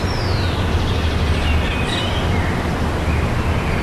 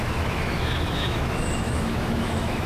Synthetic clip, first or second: second